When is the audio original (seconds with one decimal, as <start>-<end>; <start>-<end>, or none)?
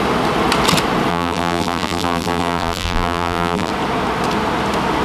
0.0-1.1; 3.7-5.0